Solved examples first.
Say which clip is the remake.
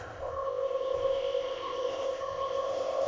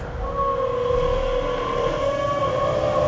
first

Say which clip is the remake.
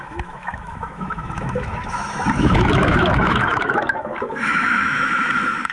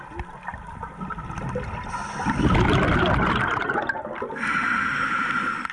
first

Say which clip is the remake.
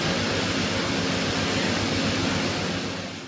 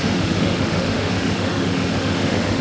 second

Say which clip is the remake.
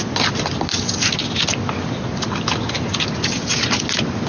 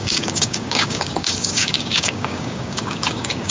second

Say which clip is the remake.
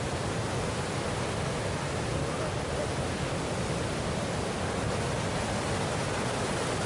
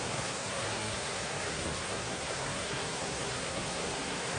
second